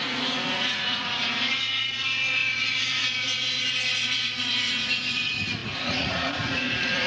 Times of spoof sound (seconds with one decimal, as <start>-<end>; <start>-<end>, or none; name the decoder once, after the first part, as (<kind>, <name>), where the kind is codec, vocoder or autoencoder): 0.0-7.1 (vocoder, Vocos)